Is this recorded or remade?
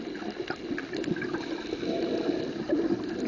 recorded